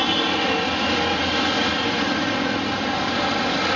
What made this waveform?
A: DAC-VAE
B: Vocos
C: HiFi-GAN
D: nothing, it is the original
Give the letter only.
D